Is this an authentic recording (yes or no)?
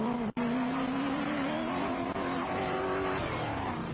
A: yes